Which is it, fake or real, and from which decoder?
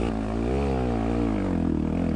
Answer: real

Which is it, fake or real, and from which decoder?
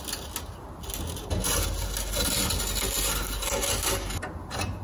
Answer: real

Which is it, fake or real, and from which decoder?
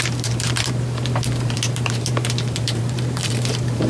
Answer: fake, vocoder, BigVGAN v2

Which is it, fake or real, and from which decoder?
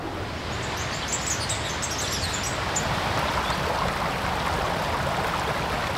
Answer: real